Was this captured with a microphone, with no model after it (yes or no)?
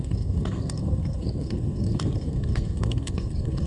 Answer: no